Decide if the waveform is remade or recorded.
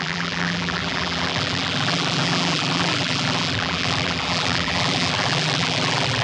remade